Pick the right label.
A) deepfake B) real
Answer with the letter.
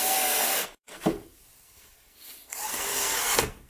A